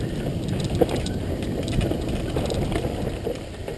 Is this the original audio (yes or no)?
no